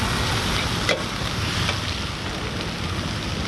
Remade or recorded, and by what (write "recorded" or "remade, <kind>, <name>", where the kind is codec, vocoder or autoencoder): recorded